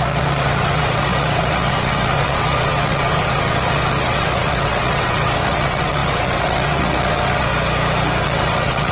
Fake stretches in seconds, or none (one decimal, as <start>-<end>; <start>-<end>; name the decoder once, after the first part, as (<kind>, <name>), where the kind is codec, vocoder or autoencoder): 0.0-7.5 (vocoder, WaveNeXt); 8.2-8.9